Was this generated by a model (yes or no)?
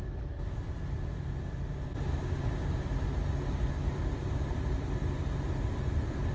no